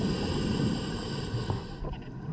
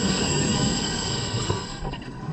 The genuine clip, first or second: first